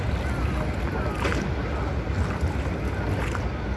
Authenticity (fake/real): real